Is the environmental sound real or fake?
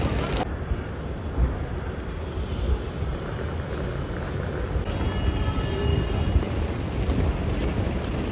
real